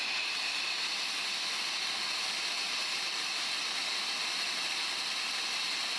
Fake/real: real